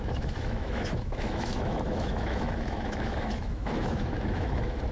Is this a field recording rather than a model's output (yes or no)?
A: no